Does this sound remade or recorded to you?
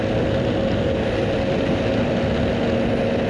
recorded